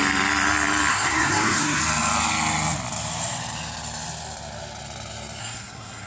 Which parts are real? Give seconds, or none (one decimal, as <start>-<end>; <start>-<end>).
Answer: 0.0-0.9; 1.8-5.4